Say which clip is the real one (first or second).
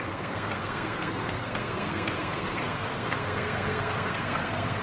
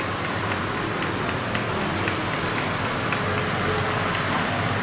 second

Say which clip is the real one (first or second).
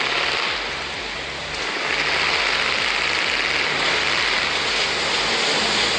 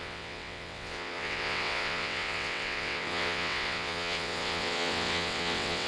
first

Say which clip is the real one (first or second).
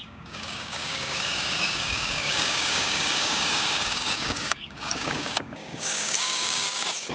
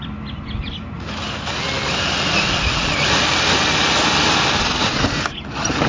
second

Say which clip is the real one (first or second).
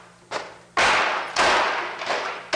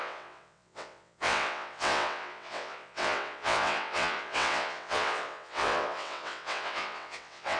first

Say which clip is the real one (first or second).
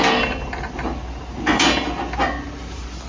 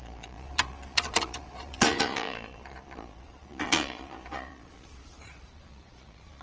first